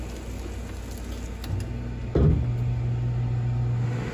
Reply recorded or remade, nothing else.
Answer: recorded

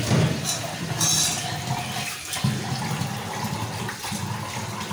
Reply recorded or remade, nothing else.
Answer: recorded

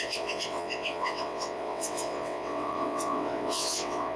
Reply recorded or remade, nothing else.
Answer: remade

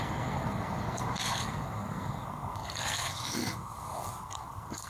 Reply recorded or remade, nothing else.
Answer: remade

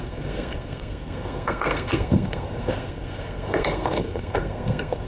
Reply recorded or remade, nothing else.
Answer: remade